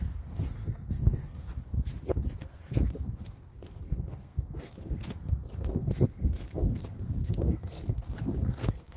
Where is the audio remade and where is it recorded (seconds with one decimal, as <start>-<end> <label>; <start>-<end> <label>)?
0.0-1.5 remade; 1.5-2.4 recorded; 2.4-9.0 remade